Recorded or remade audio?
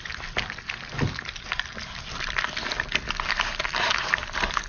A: recorded